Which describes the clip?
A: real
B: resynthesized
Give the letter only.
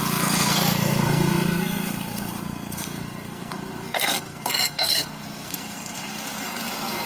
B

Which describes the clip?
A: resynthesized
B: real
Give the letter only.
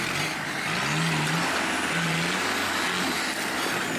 B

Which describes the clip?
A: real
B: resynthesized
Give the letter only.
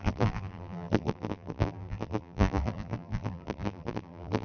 B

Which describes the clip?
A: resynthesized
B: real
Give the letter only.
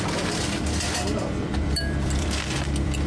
A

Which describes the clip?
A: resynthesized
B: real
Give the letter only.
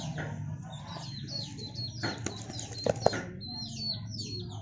B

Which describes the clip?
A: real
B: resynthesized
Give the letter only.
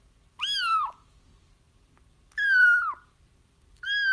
A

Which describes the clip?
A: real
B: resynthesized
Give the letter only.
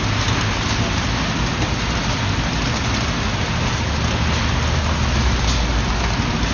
A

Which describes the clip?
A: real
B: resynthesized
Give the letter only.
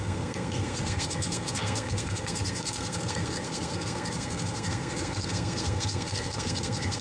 B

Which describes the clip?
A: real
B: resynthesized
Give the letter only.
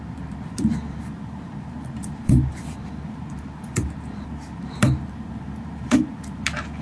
B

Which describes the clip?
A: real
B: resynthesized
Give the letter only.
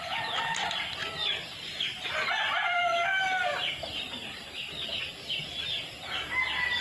A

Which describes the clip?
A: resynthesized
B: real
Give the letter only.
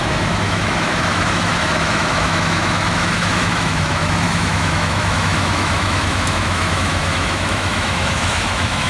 A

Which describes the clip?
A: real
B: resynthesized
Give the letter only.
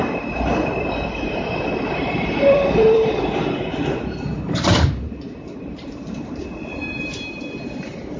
B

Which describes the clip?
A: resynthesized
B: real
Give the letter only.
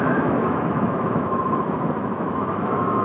A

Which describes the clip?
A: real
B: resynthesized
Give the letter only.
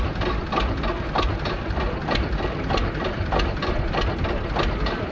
A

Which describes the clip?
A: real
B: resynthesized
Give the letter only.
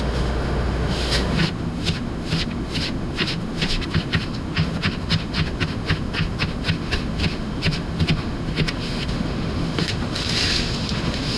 B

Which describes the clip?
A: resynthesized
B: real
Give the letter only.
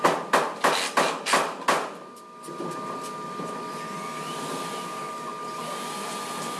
B